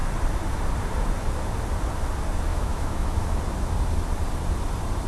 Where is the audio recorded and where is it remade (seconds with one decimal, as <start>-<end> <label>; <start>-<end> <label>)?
0.0-2.5 recorded; 2.5-3.4 remade; 3.4-5.1 recorded